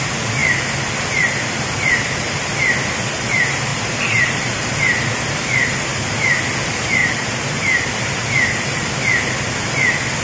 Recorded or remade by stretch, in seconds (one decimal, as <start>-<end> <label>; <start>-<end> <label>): 0.0-3.7 recorded; 3.7-4.8 remade; 4.8-5.6 recorded; 5.6-6.2 remade; 6.2-7.0 recorded; 7.0-7.9 remade; 7.9-10.2 recorded